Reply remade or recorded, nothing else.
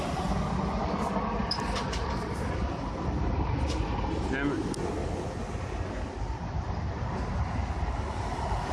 recorded